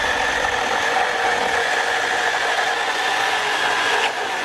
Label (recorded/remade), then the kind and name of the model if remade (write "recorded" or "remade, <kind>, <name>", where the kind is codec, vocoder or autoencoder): remade, vocoder, Vocos